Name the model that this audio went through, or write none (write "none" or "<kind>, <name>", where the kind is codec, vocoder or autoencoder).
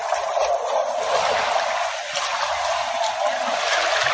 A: none